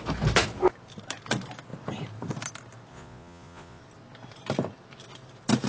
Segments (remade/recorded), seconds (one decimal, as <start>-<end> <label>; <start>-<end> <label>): 0.0-2.9 recorded; 2.9-3.8 remade; 3.8-5.7 recorded